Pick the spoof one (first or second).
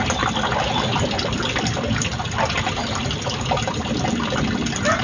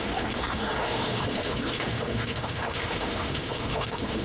second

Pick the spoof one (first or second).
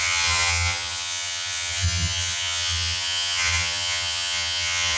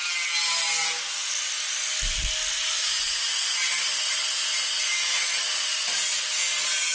first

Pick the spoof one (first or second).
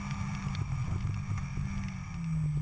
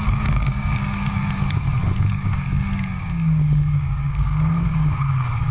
second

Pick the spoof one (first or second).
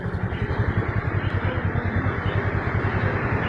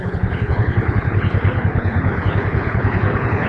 second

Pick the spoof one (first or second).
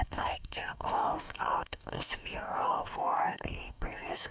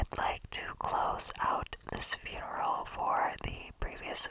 first